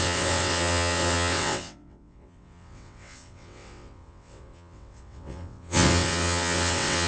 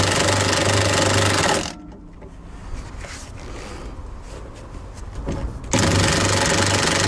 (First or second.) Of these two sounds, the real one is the second